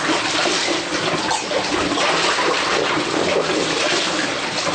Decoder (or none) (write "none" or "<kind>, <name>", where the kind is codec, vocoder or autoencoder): none